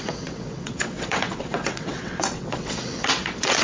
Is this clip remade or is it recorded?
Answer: remade